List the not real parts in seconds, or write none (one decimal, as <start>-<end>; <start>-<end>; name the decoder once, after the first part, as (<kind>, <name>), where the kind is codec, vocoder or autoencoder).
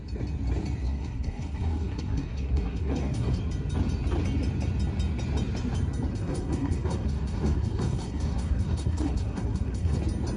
0.8-3.4 (codec, SNAC); 6.1-10.0